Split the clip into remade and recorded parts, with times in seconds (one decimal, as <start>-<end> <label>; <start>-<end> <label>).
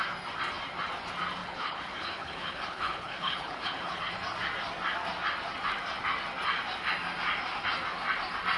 0.0-1.4 recorded; 1.4-4.0 remade; 4.0-8.6 recorded